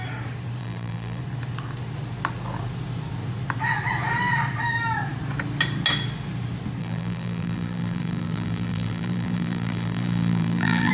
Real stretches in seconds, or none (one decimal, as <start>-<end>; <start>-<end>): 0.0-0.6; 1.2-6.8